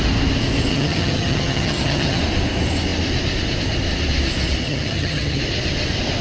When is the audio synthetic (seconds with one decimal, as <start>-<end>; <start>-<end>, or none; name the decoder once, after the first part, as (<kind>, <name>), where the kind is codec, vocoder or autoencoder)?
0.7-2.2 (vocoder, HiFi-GAN); 4.6-5.4